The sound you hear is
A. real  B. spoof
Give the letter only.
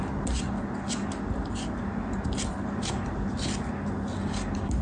A